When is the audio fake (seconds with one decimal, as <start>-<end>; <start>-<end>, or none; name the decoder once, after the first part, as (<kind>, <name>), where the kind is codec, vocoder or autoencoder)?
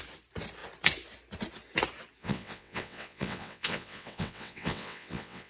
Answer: 2.2-5.5 (vocoder, WaveNeXt)